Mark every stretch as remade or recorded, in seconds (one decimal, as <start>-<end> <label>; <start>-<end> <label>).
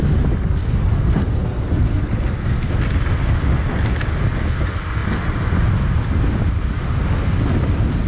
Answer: 0.0-0.6 recorded; 0.6-2.7 remade; 2.7-8.1 recorded